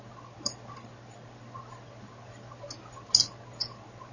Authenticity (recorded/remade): recorded